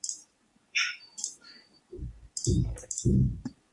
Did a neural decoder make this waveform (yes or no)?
yes